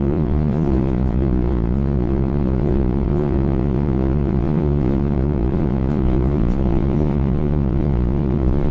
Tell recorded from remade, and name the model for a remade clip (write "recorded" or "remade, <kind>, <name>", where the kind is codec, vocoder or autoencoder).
remade, vocoder, Vocos